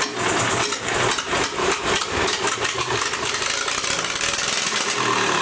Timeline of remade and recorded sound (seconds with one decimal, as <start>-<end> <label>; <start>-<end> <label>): 0.0-1.6 recorded; 1.6-3.3 remade; 3.3-5.4 recorded